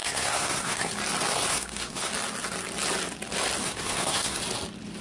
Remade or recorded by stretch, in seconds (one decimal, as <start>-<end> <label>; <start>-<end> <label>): 0.0-0.9 remade; 0.9-1.5 recorded; 1.5-2.1 remade; 2.1-3.6 recorded; 3.6-4.4 remade; 4.4-5.0 recorded